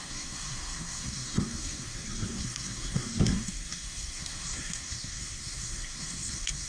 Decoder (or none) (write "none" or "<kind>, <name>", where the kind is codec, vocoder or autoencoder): codec, SNAC